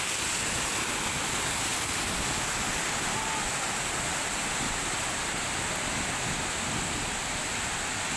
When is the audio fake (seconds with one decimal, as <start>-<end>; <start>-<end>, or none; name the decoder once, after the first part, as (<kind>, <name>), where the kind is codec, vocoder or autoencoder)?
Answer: none